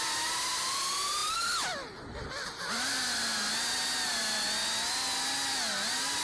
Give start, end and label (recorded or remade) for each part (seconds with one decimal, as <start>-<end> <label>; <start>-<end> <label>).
0.0-6.2 recorded